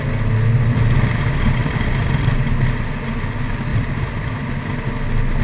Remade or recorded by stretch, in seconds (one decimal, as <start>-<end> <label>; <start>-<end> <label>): 0.0-1.6 recorded; 1.6-2.4 remade; 2.4-3.7 recorded; 3.7-4.2 remade; 4.2-5.4 recorded